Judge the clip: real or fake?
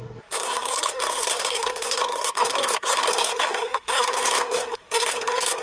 fake